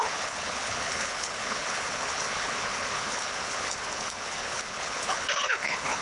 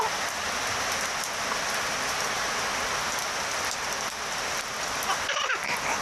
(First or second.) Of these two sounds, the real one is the second